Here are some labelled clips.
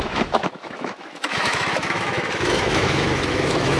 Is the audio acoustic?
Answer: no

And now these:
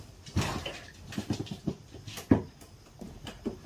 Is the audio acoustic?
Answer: yes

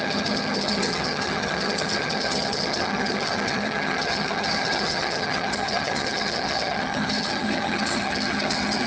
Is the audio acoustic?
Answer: no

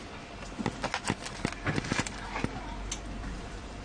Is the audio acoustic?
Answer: yes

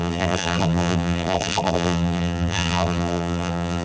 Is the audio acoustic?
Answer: no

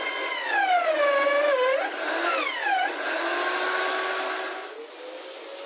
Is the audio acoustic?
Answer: yes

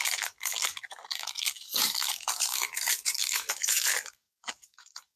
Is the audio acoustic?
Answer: no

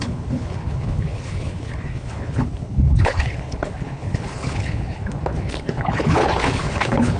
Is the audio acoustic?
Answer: no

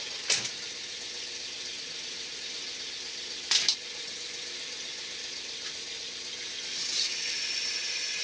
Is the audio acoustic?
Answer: yes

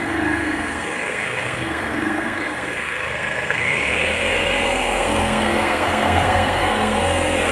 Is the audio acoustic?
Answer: no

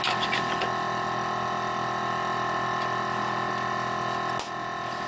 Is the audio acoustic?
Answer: yes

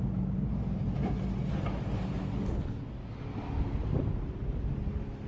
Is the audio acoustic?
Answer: yes